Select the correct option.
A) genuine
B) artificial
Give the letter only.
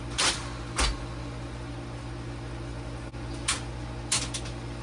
A